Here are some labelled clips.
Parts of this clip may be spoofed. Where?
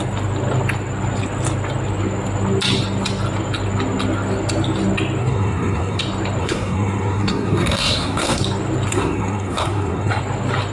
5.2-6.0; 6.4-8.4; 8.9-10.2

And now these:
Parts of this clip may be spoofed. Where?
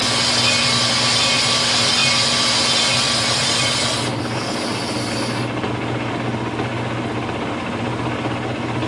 none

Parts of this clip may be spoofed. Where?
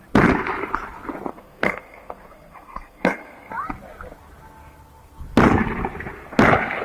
1.3-3.5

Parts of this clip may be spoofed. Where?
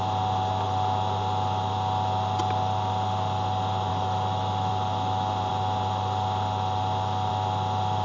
3.9-4.7